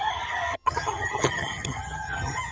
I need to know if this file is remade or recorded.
remade